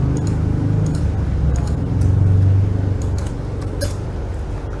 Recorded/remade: recorded